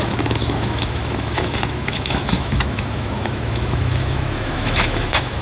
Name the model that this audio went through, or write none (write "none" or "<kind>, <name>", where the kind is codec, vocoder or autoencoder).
autoencoder, DAC-VAE